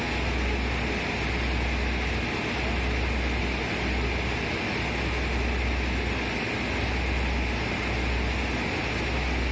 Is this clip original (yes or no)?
yes